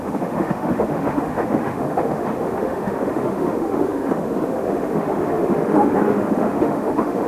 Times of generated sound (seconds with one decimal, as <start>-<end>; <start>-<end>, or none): 0.0-7.3